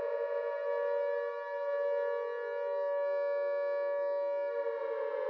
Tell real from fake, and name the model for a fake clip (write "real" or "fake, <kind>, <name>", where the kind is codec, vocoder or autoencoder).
real